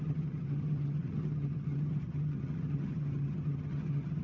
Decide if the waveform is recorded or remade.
remade